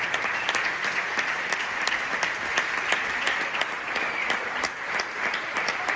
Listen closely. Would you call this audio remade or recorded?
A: recorded